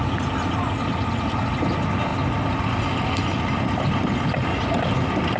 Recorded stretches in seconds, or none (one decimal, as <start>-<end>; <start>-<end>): 0.0-5.4